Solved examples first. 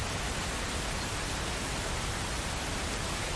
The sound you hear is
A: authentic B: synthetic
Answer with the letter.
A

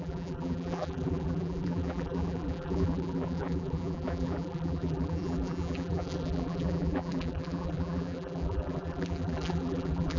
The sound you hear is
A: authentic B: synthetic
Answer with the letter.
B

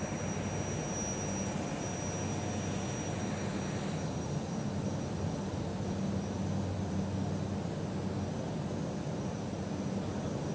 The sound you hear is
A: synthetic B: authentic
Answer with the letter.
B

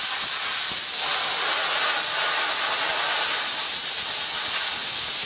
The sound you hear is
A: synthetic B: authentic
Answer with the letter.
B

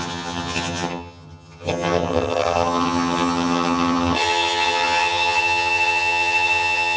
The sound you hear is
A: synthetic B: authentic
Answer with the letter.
A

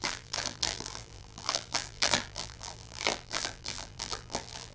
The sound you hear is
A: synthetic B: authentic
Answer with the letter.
A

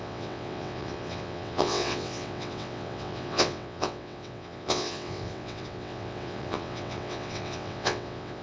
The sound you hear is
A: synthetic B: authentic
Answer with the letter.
A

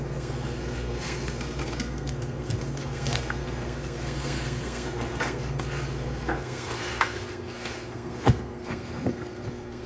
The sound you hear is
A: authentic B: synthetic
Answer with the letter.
B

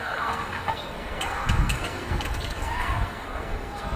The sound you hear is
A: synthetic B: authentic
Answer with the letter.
A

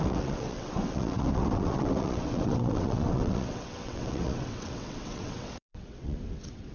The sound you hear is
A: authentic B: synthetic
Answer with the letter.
B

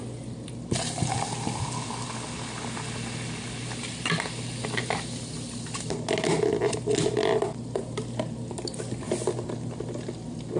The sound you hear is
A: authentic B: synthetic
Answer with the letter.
A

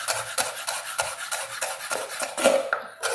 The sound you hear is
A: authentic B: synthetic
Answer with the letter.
A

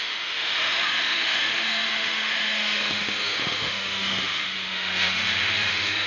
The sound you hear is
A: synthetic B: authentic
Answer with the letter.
A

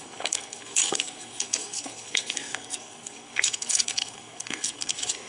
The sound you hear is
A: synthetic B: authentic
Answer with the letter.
A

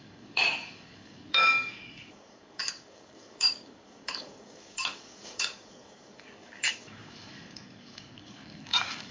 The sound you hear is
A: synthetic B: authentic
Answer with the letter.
A